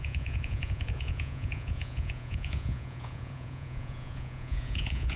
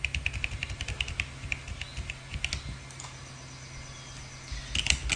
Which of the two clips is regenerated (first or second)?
first